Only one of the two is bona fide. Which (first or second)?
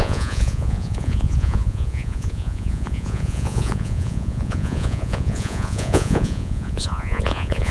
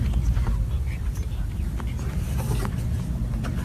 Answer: second